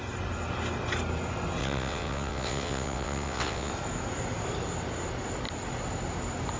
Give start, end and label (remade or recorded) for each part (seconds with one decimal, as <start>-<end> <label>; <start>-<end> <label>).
0.0-1.6 recorded; 1.6-3.7 remade; 3.7-6.6 recorded